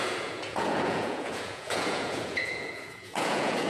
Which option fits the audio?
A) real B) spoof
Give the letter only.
B